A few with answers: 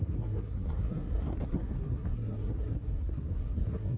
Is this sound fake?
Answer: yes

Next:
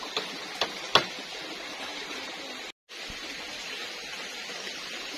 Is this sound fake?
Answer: no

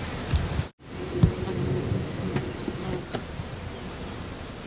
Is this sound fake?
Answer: no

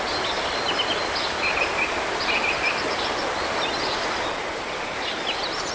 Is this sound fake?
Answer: no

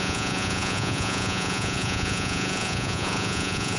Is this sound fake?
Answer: yes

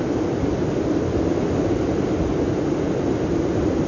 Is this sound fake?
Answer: no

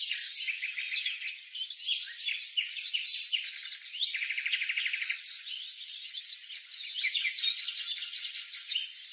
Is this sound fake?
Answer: no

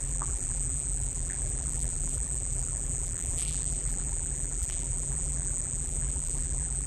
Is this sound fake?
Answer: yes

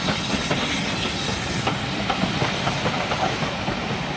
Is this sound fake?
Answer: no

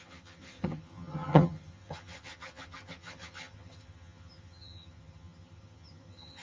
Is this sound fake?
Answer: yes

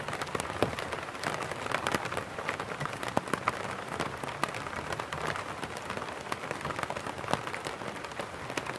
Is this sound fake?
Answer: no